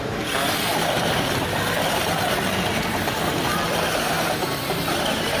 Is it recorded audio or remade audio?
recorded